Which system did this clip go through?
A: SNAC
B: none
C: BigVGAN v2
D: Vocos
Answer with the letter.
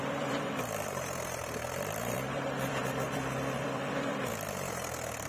C